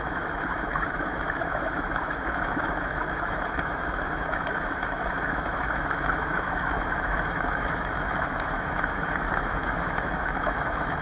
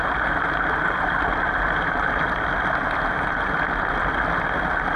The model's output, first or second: first